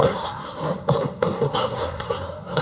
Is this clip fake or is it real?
fake